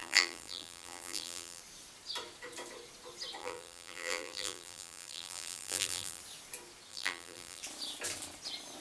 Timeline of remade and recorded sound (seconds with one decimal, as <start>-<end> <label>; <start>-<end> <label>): 0.0-1.6 remade; 1.6-3.4 recorded; 3.4-6.2 remade; 6.2-6.9 recorded; 6.9-7.6 remade; 7.6-8.8 recorded